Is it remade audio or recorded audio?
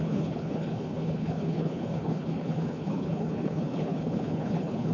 remade